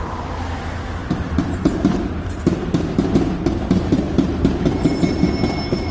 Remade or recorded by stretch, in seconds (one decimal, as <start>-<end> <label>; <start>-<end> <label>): 0.0-1.0 recorded; 1.0-2.4 remade; 2.4-5.9 recorded